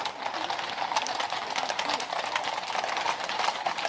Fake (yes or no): no